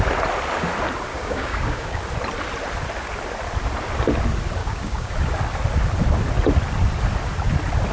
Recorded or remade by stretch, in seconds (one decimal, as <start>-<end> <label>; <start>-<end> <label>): 0.0-1.1 recorded; 1.1-2.0 remade; 2.0-4.6 recorded; 4.6-5.1 remade; 5.1-7.9 recorded